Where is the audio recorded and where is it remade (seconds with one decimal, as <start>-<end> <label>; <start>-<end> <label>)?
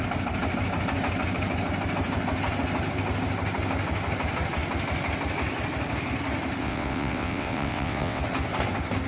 0.0-6.6 recorded; 6.6-8.2 remade; 8.2-9.1 recorded